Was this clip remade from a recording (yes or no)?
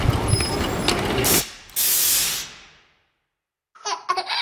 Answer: no